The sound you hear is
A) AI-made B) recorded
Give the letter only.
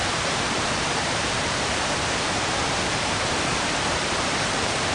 A